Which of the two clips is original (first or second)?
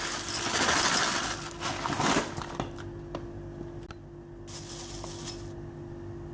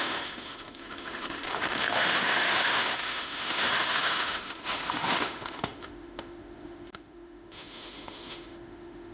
first